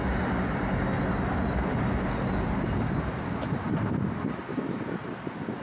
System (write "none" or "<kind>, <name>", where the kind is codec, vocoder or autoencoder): none